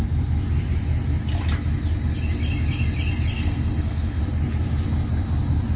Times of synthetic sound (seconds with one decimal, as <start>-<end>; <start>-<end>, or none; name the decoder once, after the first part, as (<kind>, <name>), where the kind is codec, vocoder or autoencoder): 3.3-4.2 (codec, SNAC)